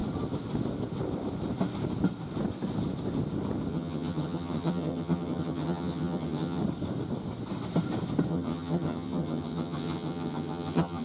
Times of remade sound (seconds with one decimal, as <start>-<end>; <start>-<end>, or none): 3.7-6.6; 8.3-11.0